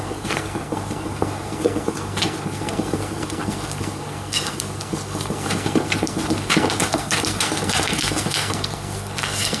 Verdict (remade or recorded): remade